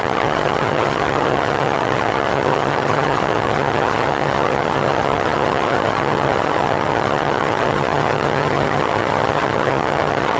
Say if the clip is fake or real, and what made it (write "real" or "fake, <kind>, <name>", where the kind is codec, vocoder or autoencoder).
fake, vocoder, HiFi-GAN